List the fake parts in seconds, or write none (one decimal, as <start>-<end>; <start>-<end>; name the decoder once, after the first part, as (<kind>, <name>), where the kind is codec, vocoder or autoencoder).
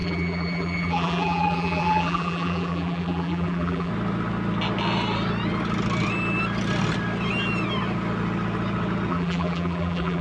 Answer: 0.0-3.9 (vocoder, BigVGAN v2); 9.1-10.2